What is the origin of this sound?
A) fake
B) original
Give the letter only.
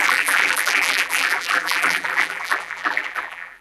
A